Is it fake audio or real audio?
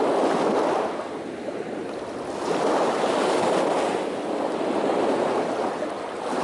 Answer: real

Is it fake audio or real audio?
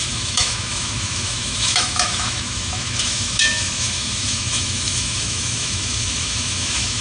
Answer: fake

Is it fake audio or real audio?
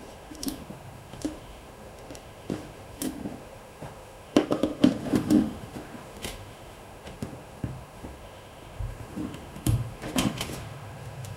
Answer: fake